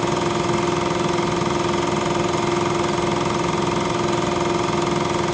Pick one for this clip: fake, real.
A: real